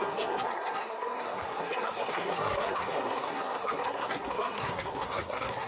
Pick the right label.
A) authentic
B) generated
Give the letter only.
B